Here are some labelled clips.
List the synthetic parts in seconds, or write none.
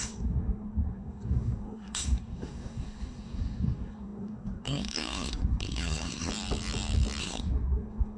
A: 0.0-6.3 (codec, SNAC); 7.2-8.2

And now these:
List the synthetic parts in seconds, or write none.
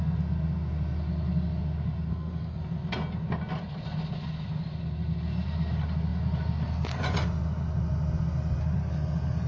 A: 2.1-2.6 (codec, SNAC)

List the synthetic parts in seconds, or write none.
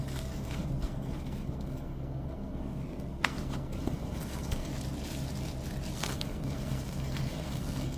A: 0.0-4.7 (codec, SNAC); 5.9-8.0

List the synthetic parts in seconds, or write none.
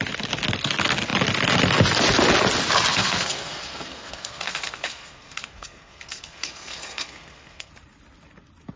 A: 2.9-7.7 (codec, SNAC)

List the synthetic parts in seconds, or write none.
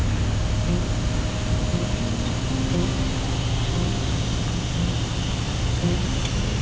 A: none